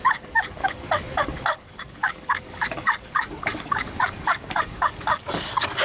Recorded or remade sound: remade